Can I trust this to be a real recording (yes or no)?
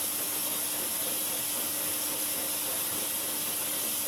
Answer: yes